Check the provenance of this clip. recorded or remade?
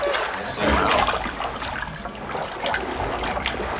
recorded